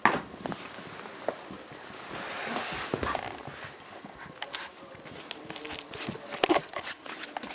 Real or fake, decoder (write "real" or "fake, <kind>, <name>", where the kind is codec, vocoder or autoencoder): real